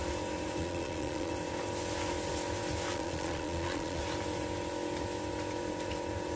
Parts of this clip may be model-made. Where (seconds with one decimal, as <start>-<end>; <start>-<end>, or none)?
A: 0.6-1.3; 2.9-4.0